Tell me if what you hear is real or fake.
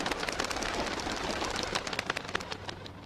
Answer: real